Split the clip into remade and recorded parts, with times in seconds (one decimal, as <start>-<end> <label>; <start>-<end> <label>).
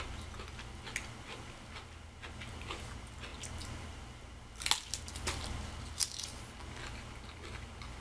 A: 0.0-8.0 recorded